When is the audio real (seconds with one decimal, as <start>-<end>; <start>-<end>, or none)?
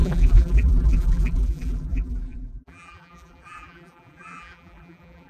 none